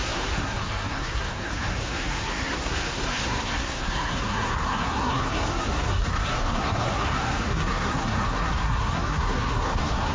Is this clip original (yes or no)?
no